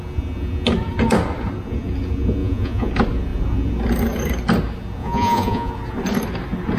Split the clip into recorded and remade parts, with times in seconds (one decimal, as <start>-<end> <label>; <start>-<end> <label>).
0.0-2.4 recorded; 2.4-2.9 remade; 2.9-5.0 recorded; 5.0-5.7 remade; 5.7-6.8 recorded